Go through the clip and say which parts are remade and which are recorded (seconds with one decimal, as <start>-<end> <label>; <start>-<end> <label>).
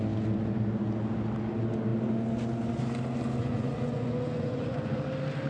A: 0.0-3.4 recorded; 3.4-5.0 remade; 5.0-5.5 recorded